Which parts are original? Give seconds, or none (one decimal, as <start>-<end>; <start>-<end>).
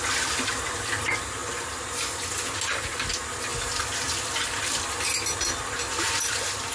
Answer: 0.0-6.7